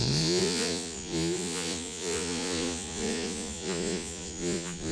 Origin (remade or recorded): remade